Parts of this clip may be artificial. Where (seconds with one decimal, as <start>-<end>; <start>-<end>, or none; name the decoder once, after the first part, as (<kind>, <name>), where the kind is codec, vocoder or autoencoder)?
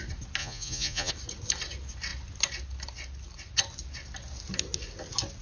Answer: 0.4-1.1 (vocoder, Vocos)